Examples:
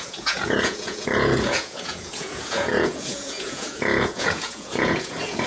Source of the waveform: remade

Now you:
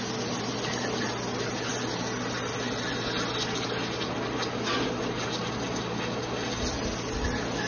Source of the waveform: recorded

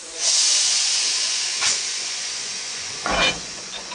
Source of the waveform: remade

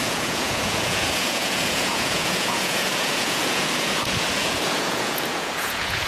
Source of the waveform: remade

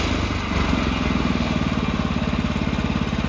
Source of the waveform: recorded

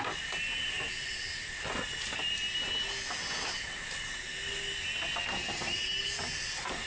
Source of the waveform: recorded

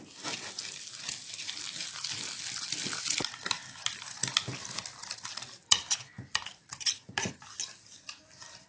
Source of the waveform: recorded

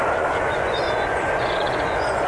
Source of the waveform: remade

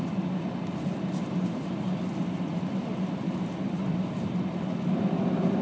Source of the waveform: recorded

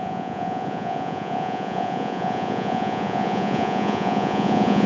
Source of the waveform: remade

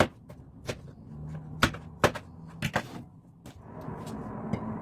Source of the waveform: recorded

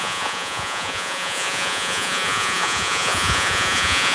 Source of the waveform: remade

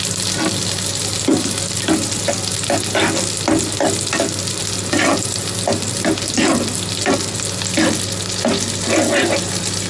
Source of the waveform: recorded